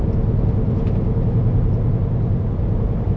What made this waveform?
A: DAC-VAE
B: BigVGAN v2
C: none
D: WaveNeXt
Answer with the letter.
C